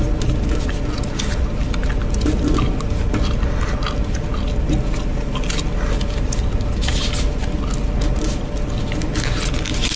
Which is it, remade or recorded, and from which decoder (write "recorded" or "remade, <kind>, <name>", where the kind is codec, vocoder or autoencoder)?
recorded